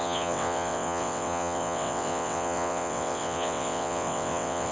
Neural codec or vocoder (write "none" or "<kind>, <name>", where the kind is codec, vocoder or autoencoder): vocoder, WaveNeXt